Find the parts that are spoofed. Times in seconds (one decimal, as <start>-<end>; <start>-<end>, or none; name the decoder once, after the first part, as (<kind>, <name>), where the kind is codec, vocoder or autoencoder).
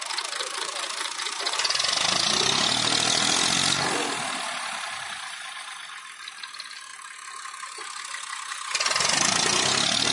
none